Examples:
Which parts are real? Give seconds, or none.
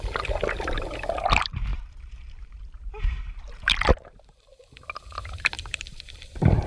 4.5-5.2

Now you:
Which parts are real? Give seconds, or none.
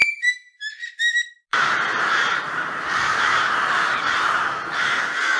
0.6-1.5; 4.4-5.4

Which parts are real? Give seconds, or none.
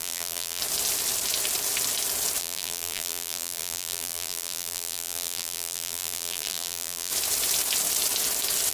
0.6-2.4; 7.1-8.7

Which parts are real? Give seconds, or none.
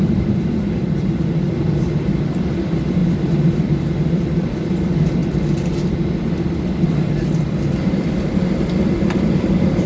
5.2-7.1